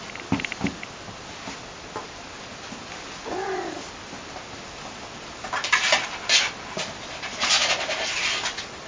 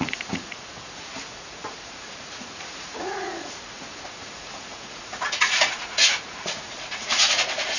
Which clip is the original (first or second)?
first